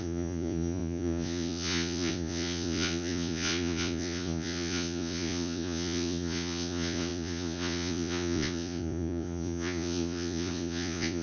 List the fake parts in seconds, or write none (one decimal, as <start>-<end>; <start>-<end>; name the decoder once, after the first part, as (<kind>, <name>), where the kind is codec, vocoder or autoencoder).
0.0-11.2 (vocoder, Vocos)